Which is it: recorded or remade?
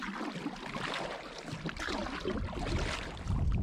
recorded